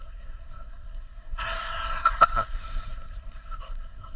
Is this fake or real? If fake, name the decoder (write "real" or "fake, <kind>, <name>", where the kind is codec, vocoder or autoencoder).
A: fake, codec, SNAC